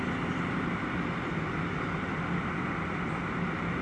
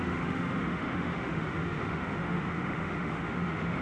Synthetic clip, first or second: second